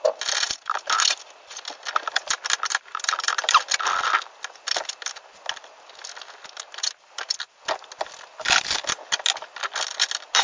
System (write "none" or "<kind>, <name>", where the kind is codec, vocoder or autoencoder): none